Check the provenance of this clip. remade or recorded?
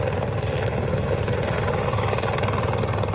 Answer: recorded